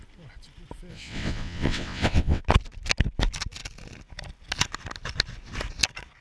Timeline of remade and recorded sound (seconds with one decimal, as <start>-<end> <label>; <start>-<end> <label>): 0.0-0.9 recorded; 0.9-2.4 remade; 2.4-6.2 recorded